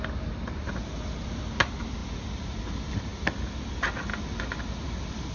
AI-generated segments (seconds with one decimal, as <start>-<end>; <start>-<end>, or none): none